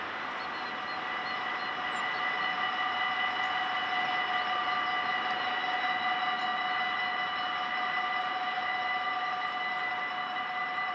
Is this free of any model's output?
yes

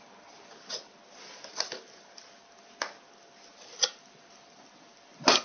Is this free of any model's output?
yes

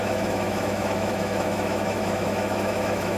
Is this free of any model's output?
no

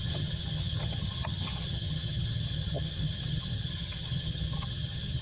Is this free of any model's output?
no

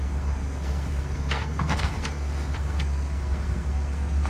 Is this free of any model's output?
no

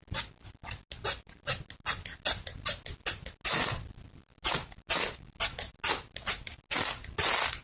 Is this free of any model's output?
yes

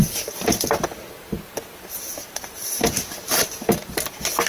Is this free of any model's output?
no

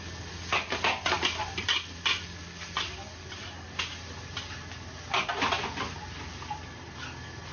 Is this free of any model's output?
yes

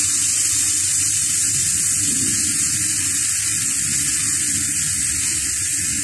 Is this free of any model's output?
yes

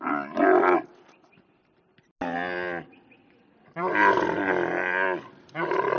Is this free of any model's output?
yes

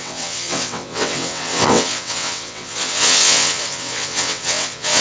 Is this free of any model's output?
no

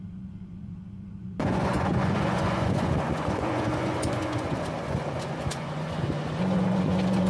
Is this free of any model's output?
no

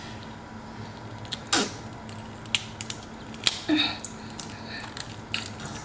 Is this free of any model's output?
yes